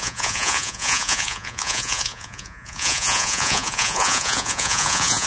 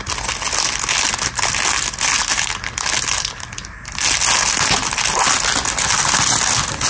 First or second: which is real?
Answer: second